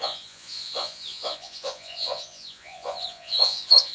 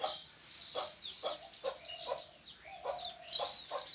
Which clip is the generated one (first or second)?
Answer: first